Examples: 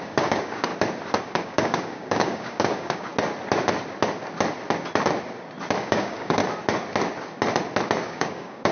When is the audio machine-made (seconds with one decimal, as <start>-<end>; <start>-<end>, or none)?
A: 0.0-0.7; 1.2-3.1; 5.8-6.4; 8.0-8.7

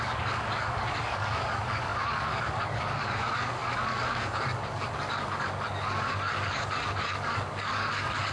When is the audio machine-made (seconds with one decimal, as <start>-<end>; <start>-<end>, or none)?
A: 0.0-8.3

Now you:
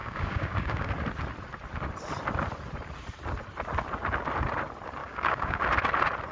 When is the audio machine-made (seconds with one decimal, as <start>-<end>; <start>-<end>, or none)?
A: 0.0-0.9; 5.0-5.6

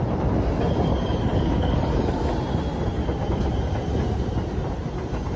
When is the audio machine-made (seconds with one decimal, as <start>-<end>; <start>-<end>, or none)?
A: 0.9-2.3

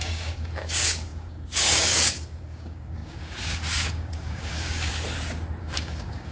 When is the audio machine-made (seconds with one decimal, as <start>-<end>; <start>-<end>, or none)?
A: 0.0-4.9; 5.6-6.3

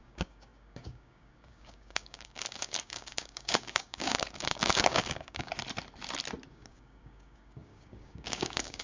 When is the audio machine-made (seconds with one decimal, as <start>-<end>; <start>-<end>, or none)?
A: 0.0-5.5; 6.5-8.8